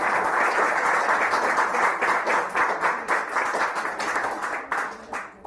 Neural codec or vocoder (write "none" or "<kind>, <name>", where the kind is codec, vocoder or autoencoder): none